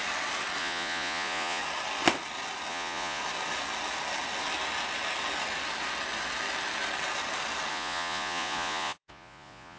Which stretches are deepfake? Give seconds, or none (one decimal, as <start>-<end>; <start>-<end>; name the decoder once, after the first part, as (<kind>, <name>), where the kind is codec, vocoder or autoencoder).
0.6-1.6 (vocoder, Vocos); 2.7-3.2; 7.7-9.8